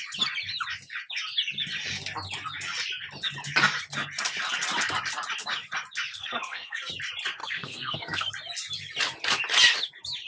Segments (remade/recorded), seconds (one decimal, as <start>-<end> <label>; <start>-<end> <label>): 0.0-6.1 recorded; 6.1-6.8 remade; 6.8-7.4 recorded; 7.4-8.3 remade; 8.3-10.3 recorded